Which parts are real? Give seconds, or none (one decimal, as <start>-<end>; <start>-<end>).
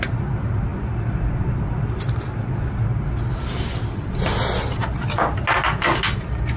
0.0-6.6